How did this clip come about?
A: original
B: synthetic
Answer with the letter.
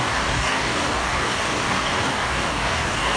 B